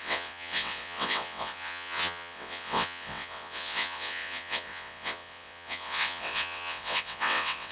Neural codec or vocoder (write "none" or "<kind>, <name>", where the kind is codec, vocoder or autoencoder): vocoder, WaveNeXt